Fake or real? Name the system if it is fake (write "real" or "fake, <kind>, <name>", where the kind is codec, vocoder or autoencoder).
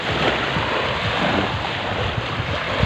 real